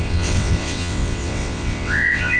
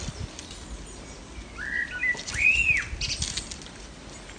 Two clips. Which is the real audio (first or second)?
second